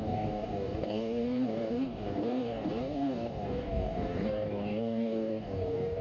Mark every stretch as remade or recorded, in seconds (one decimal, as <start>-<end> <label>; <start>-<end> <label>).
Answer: 0.0-6.0 remade